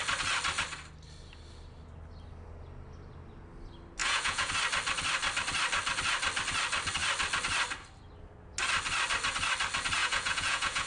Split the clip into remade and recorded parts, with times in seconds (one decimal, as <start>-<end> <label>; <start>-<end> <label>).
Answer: 0.0-4.0 recorded; 4.0-4.5 remade; 4.5-10.0 recorded; 10.0-10.9 remade